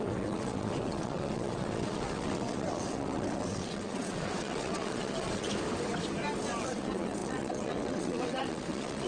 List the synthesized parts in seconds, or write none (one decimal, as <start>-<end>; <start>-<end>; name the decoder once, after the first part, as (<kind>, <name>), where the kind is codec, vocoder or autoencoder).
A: 0.0-5.5 (vocoder, WaveNeXt); 6.6-9.1